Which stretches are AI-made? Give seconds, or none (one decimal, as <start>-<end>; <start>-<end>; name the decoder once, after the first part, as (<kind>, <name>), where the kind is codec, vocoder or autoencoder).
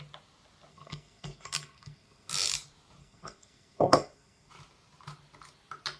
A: 0.7-2.3 (codec, SNAC); 3.0-4.5